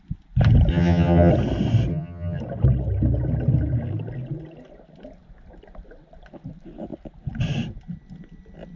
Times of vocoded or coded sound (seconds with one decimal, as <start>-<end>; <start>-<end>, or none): 0.7-1.3; 1.9-2.4